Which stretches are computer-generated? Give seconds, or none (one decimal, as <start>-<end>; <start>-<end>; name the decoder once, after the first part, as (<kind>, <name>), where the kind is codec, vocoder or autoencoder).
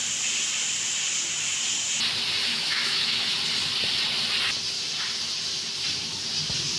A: 2.5-3.3 (autoencoder, DAC-VAE)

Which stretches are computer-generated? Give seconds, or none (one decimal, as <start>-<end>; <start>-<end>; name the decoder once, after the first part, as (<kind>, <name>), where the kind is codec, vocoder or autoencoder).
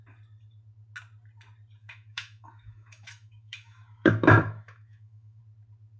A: 1.8-5.4 (autoencoder, DAC-VAE)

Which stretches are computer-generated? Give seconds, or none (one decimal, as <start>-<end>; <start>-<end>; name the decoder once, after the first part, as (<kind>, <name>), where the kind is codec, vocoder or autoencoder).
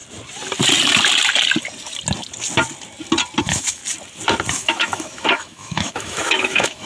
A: 3.4-3.8 (autoencoder, DAC-VAE); 4.5-6.9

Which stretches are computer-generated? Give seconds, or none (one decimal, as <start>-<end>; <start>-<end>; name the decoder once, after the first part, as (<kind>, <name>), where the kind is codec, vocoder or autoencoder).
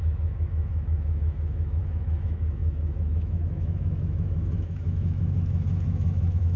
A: 0.0-6.6 (autoencoder, DAC-VAE)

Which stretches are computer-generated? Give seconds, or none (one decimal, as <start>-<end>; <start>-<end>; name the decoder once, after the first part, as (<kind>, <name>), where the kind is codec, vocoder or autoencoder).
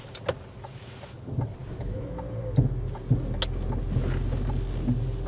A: 1.6-2.2 (autoencoder, DAC-VAE)